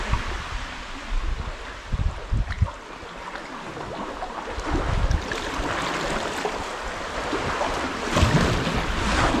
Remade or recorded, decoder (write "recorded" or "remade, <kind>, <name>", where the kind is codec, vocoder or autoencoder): recorded